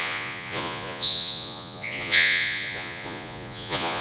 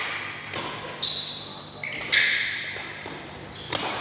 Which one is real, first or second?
second